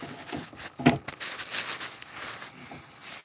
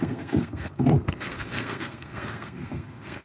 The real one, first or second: first